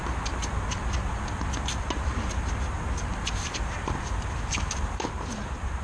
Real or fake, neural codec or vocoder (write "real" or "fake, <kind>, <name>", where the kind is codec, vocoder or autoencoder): real